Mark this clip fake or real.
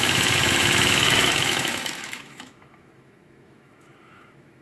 fake